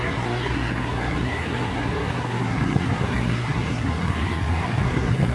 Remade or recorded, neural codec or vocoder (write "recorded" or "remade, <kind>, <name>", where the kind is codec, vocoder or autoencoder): remade, codec, SNAC